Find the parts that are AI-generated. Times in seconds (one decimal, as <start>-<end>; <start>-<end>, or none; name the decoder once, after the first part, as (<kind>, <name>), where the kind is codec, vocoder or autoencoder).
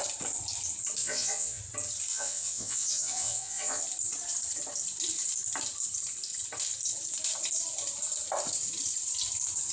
1.0-1.6 (vocoder, Vocos); 2.1-3.8